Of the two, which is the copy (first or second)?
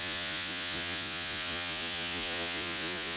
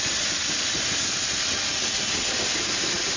first